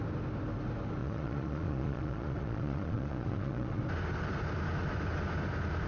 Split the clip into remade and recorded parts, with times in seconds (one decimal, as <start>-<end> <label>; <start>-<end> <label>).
0.0-1.0 recorded; 1.0-3.8 remade; 3.8-5.9 recorded

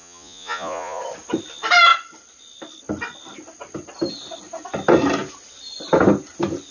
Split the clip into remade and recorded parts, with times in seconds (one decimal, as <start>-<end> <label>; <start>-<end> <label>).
0.0-1.0 remade; 1.0-6.7 recorded